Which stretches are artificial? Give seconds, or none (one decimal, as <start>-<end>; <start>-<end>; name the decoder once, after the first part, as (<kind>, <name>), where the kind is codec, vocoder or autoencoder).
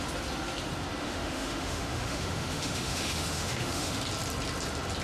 1.0-4.0 (autoencoder, DAC-VAE)